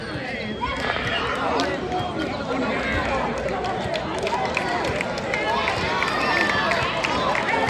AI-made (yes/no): no